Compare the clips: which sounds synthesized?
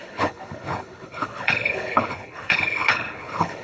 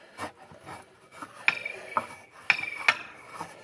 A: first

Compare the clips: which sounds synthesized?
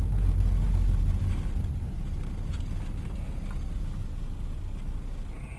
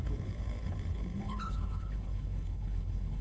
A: second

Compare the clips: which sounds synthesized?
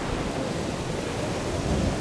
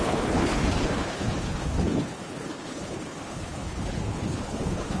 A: second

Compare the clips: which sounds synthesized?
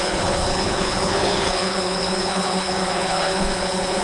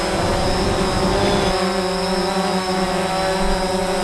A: first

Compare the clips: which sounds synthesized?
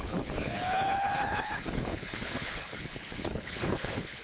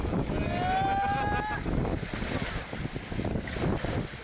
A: first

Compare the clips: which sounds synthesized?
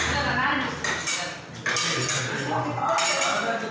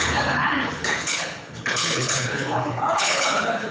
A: second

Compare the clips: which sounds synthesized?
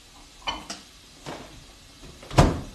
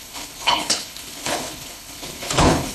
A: second